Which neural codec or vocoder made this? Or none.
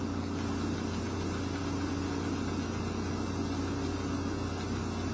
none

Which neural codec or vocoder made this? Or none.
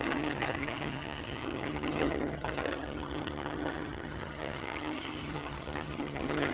vocoder, HiFi-GAN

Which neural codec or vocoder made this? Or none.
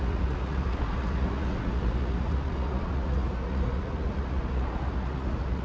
vocoder, Vocos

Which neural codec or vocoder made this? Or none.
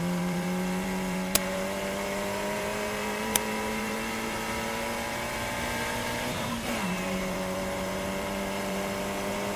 vocoder, BigVGAN v2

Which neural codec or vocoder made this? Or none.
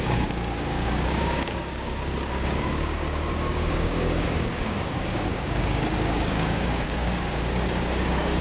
codec, DAC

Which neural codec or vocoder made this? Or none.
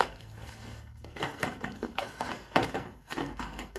codec, SNAC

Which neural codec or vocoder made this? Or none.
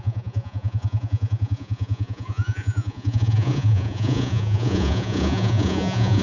vocoder, Vocos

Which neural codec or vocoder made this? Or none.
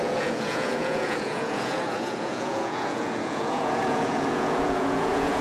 vocoder, Vocos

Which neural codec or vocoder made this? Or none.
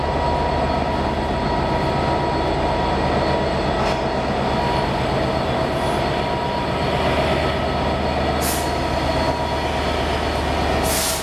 none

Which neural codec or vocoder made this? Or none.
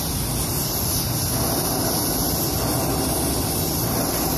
none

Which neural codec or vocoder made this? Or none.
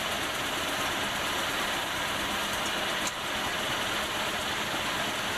none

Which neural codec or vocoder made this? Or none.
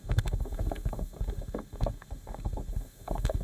codec, SNAC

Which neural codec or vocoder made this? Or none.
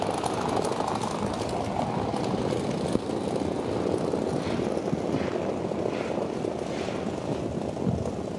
none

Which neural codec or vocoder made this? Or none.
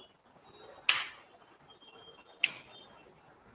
none